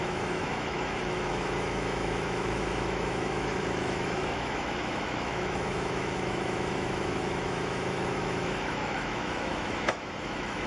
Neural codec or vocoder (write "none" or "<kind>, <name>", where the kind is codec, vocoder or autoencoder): autoencoder, DAC-VAE